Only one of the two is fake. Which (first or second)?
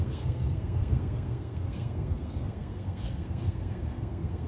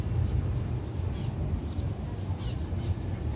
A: first